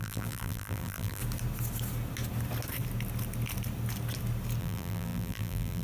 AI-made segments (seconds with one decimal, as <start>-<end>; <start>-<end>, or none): 0.0-1.2; 4.6-5.8